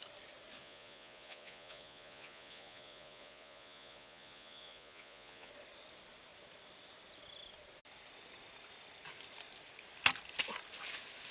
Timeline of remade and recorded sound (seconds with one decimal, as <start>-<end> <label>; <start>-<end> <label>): 0.0-0.6 recorded; 0.6-5.5 remade; 5.5-11.3 recorded